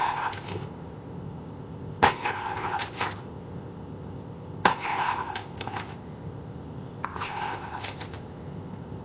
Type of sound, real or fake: fake